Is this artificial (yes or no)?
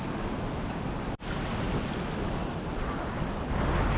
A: no